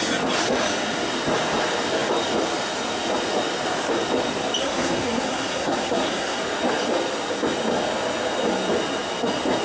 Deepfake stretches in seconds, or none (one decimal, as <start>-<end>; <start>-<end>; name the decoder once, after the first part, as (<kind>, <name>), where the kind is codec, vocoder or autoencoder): 4.6-6.4 (codec, SNAC)